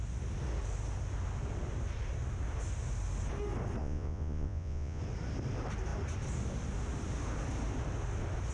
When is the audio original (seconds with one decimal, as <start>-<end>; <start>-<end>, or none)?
0.0-3.8; 5.0-8.5